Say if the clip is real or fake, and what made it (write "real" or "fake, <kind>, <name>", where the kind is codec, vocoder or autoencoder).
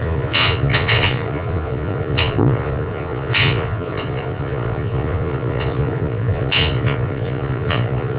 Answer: fake, vocoder, Vocos